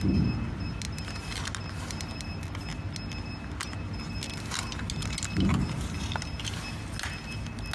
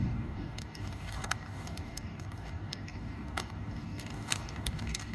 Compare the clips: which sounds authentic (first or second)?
first